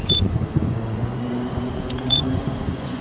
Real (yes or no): no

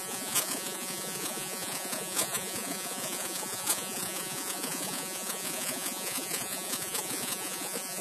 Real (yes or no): no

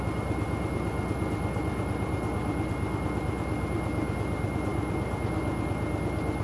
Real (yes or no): yes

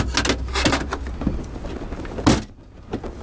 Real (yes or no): yes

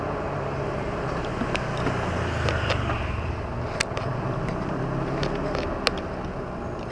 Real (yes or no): yes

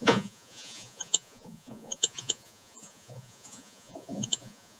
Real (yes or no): no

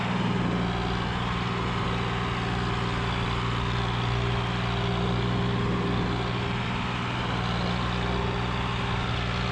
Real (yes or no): yes